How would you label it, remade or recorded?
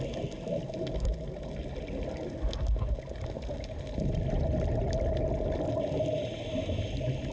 recorded